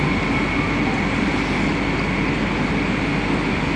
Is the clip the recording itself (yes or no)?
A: yes